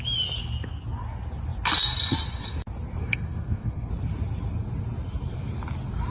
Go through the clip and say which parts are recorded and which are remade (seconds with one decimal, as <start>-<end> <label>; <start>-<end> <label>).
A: 0.0-3.0 recorded; 3.0-3.9 remade; 3.9-6.1 recorded